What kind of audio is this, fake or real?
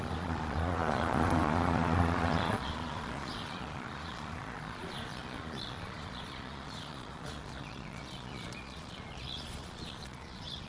fake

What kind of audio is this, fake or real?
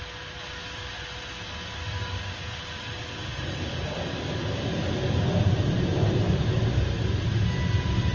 real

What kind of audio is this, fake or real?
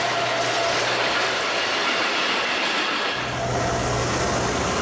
real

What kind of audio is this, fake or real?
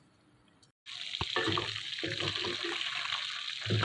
real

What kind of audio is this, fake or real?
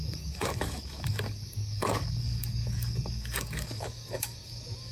fake